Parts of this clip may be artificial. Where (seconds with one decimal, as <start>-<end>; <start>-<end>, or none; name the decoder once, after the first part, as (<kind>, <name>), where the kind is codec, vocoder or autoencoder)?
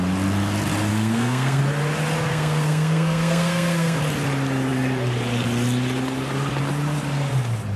0.9-1.6 (codec, SNAC); 2.3-4.0